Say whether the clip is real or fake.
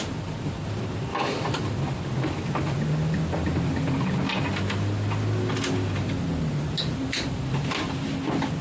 fake